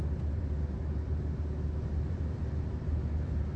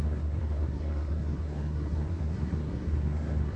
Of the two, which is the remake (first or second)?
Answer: second